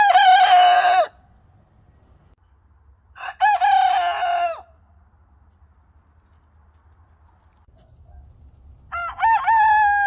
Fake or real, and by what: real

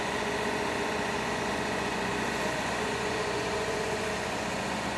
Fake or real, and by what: fake, vocoder, Vocos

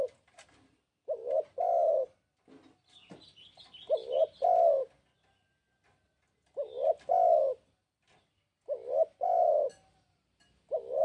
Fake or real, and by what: real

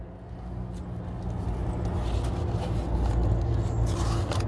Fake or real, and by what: real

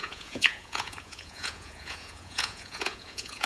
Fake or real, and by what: fake, vocoder, Vocos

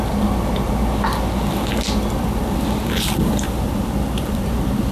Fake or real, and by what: real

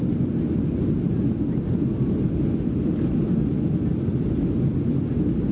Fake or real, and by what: real